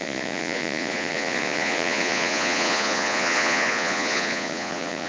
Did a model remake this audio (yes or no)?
yes